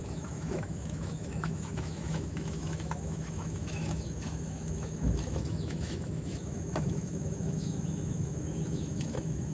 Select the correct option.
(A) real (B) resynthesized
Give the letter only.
B